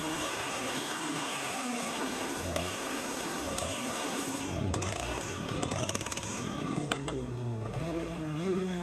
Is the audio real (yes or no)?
no